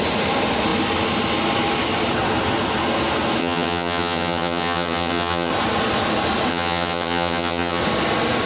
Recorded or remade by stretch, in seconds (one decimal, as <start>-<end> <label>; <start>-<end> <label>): 0.0-3.4 recorded; 3.4-5.5 remade; 5.5-6.5 recorded; 6.5-7.8 remade; 7.8-8.5 recorded

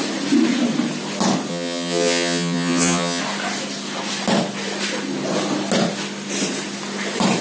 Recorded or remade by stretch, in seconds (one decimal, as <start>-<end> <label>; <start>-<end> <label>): 0.0-1.5 recorded; 1.5-3.2 remade; 3.2-7.4 recorded

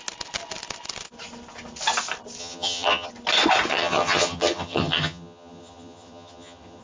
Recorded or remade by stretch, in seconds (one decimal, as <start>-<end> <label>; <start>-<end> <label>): 0.0-2.4 recorded; 2.4-3.1 remade; 3.1-3.7 recorded; 3.7-6.8 remade

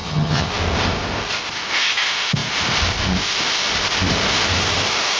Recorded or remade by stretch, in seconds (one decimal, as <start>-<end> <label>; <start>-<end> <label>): 0.0-0.5 remade; 0.5-5.2 recorded